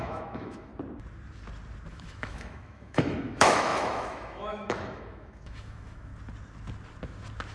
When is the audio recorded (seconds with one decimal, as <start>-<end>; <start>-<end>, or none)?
0.7-1.9; 6.1-7.5